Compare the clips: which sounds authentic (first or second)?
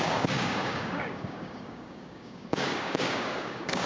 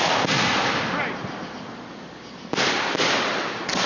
second